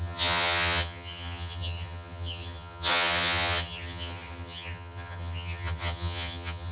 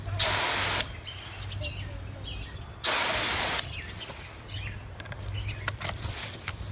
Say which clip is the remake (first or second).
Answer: first